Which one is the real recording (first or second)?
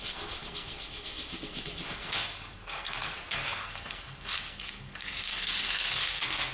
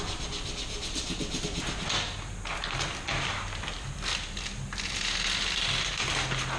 second